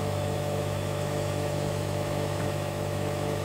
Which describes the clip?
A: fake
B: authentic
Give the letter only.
A